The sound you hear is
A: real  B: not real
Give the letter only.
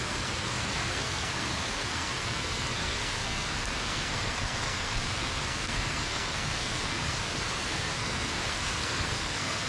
B